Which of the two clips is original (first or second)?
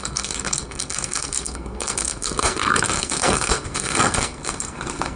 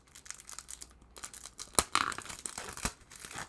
second